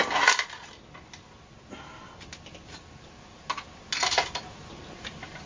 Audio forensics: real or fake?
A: real